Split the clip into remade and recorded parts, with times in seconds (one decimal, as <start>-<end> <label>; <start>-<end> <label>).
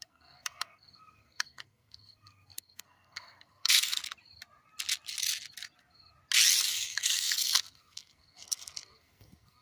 0.0-4.0 remade; 4.0-6.7 recorded; 6.7-9.6 remade